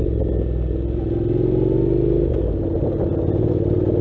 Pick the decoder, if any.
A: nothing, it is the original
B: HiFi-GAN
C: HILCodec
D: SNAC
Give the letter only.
A